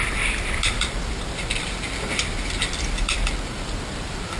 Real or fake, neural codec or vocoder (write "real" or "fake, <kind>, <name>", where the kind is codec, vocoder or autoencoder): real